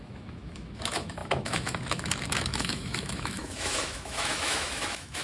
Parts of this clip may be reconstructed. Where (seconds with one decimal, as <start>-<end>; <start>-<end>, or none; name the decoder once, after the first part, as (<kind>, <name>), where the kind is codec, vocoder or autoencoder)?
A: 0.0-5.2 (autoencoder, DAC-VAE)

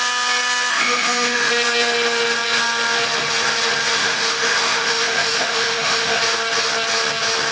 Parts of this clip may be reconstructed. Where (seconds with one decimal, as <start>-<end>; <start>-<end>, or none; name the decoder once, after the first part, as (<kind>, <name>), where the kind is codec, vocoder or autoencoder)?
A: 0.7-1.5 (autoencoder, DAC-VAE); 4.0-6.2

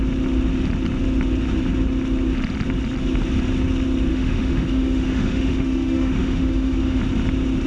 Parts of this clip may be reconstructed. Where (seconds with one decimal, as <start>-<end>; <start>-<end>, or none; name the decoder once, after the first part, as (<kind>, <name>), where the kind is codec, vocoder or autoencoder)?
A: 4.1-7.0 (autoencoder, DAC-VAE)

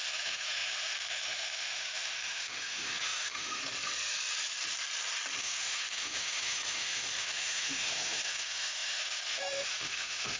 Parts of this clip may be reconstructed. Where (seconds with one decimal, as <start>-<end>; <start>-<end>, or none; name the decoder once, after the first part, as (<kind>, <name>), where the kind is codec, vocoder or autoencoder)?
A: 0.0-3.6 (autoencoder, DAC-VAE); 5.4-10.4

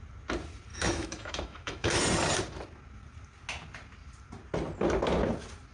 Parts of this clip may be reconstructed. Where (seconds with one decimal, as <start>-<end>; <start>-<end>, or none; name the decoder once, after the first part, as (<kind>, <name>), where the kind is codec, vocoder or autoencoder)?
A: 0.7-2.0 (autoencoder, DAC-VAE)

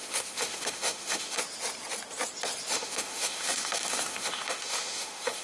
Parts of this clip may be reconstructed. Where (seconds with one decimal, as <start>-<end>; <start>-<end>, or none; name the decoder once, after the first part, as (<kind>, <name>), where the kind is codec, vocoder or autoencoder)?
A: 0.0-1.4 (autoencoder, DAC-VAE); 2.7-5.4

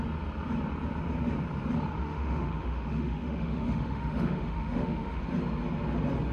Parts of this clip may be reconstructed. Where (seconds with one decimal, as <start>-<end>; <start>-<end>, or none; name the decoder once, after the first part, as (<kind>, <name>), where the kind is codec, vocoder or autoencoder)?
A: 2.0-5.2 (autoencoder, DAC-VAE)

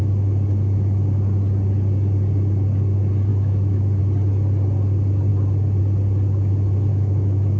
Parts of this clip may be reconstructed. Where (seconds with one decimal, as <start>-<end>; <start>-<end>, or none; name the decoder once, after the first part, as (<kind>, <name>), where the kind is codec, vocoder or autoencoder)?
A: 3.3-4.0 (autoencoder, DAC-VAE); 6.9-7.6